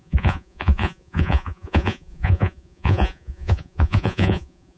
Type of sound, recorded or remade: remade